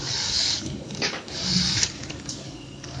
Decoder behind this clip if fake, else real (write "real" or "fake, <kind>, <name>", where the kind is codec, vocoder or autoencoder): fake, codec, DAC